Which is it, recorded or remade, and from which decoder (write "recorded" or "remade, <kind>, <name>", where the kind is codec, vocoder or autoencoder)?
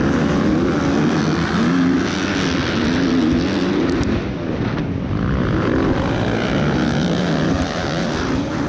recorded